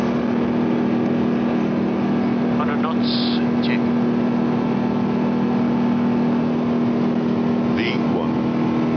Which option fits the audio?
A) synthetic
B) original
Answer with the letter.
B